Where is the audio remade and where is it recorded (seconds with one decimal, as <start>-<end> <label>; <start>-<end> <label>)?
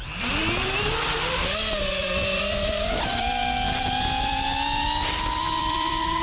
0.0-0.4 remade; 0.4-1.9 recorded; 1.9-3.4 remade; 3.4-4.2 recorded; 4.2-6.2 remade